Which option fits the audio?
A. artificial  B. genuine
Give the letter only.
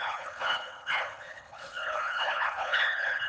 A